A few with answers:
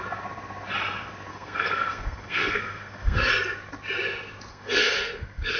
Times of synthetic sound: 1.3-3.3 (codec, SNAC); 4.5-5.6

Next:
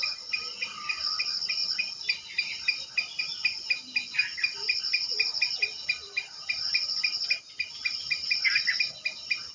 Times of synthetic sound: none